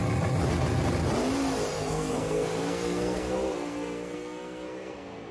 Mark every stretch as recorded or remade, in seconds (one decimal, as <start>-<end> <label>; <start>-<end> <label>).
0.0-1.7 recorded; 1.7-5.3 remade